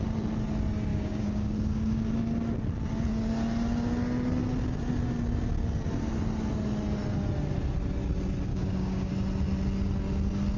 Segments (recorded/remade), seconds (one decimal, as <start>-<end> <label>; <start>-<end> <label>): 0.0-0.9 recorded; 0.9-2.1 remade; 2.1-8.5 recorded; 8.5-9.1 remade; 9.1-10.6 recorded